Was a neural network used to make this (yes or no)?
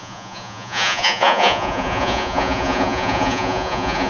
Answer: yes